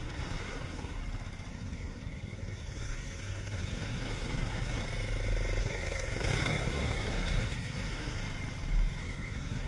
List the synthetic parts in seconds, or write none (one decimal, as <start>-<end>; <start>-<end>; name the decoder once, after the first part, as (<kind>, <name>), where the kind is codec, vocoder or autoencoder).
0.0-1.0 (codec, SNAC); 1.5-4.8; 5.6-8.2; 9.0-9.7